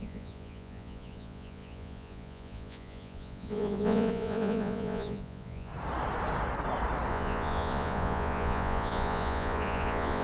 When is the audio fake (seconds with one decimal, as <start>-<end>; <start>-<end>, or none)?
0.0-5.7; 7.1-10.2